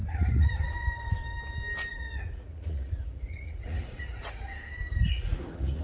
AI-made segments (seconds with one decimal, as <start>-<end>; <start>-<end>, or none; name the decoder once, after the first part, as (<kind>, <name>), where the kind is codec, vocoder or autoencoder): 0.0-0.5 (vocoder, Vocos); 1.9-4.5; 5.1-5.8